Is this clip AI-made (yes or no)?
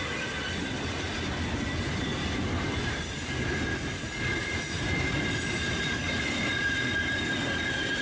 no